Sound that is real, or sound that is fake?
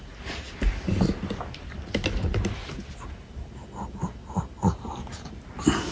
real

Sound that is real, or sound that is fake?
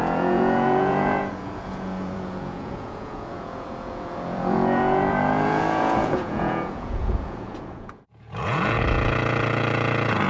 fake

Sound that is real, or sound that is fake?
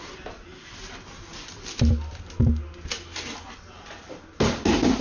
real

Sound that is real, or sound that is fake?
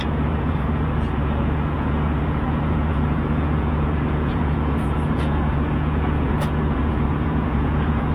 fake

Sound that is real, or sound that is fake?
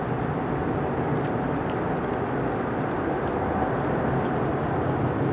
real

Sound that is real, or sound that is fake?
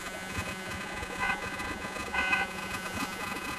fake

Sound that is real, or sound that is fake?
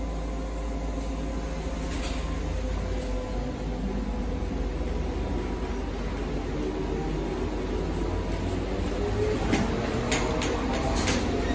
real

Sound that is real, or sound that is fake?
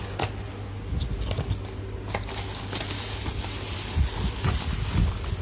real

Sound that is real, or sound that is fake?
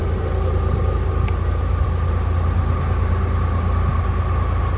real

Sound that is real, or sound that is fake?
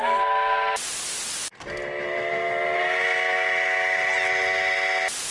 real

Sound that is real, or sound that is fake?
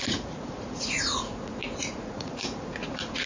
fake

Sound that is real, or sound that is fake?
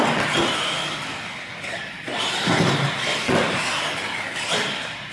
real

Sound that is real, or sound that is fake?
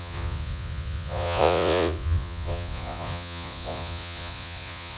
fake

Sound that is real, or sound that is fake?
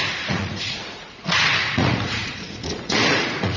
fake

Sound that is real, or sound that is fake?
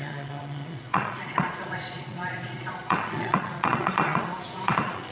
fake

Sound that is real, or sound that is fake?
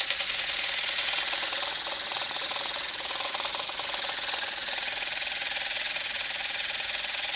fake